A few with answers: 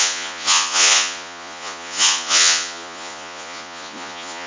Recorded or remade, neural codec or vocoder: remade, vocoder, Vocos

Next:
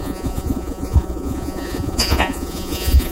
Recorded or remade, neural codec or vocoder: remade, vocoder, Vocos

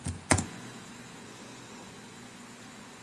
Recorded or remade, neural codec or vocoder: remade, vocoder, Vocos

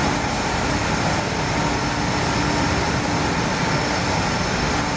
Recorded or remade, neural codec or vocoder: recorded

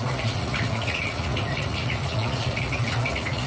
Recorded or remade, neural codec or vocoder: remade, vocoder, Vocos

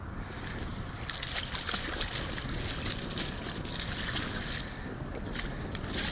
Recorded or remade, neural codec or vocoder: recorded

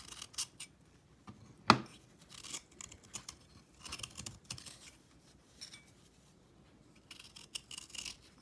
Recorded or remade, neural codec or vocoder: recorded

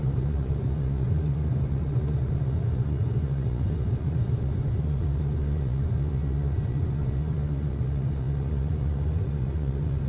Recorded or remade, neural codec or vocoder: remade, vocoder, Vocos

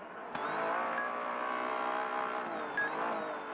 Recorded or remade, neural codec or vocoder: recorded